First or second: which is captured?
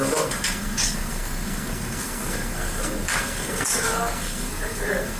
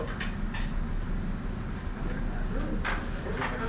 second